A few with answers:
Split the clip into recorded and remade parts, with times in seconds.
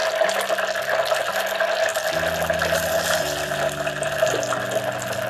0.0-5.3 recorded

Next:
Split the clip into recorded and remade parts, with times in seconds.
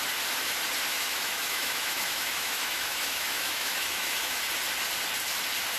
0.0-0.9 recorded; 0.9-4.4 remade; 4.4-5.8 recorded